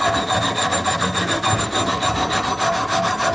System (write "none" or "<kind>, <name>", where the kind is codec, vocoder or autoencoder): none